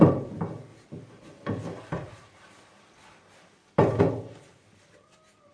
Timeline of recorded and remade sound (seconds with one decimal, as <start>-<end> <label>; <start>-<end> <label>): 0.0-5.5 recorded